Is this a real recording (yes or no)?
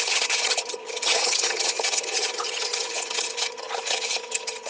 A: no